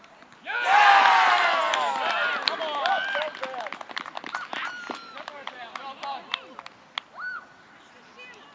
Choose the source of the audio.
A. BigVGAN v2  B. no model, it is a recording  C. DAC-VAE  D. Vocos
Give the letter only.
B